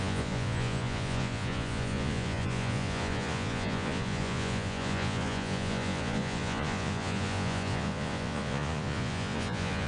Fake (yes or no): yes